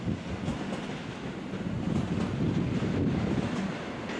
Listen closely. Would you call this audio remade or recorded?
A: recorded